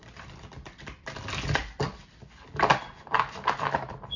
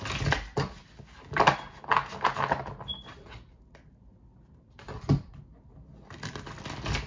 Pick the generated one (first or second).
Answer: first